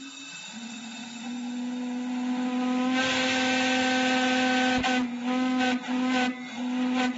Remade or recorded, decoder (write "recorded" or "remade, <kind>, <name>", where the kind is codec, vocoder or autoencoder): recorded